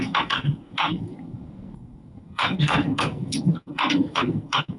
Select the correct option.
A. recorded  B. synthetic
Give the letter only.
B